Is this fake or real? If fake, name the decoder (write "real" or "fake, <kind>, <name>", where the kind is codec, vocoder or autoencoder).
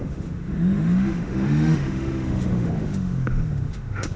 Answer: fake, autoencoder, DAC-VAE